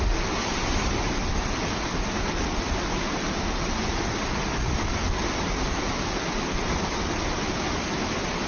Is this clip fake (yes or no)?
no